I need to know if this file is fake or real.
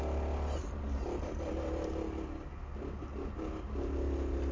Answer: real